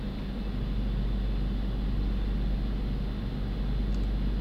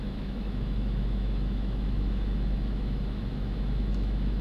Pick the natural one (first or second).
first